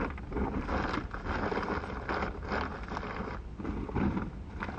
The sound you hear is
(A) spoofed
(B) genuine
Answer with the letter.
B